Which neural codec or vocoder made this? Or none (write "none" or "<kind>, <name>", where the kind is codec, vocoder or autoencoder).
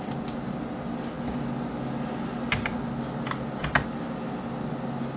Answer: none